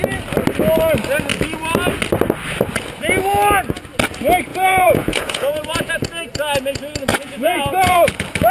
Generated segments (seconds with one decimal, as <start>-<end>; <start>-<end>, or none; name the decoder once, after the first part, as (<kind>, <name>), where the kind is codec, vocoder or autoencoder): 4.5-5.9 (vocoder, Vocos); 7.1-8.1

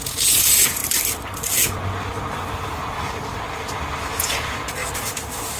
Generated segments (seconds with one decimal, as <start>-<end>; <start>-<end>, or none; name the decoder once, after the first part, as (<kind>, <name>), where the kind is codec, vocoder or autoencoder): 0.0-0.8 (vocoder, Vocos); 4.2-4.8